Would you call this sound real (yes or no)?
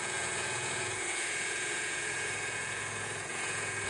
no